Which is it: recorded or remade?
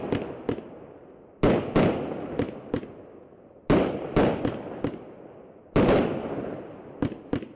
recorded